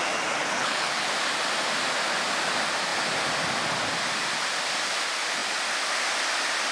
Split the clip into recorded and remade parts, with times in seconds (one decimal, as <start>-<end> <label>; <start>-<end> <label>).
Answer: 0.0-0.4 recorded; 0.4-1.1 remade; 1.1-6.7 recorded